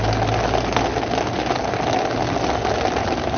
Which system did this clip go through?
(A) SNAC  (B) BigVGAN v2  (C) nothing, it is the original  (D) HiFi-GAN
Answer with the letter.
C